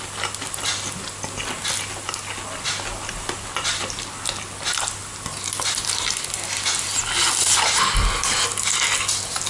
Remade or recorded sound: recorded